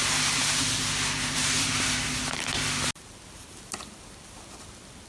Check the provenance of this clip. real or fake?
real